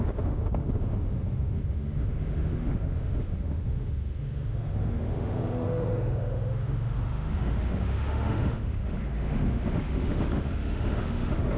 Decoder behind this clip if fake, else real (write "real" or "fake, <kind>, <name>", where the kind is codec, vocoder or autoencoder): fake, autoencoder, DAC-VAE